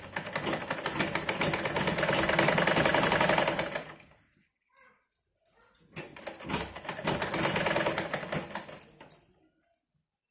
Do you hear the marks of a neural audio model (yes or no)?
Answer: no